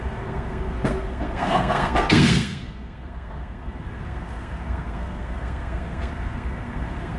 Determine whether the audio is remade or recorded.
remade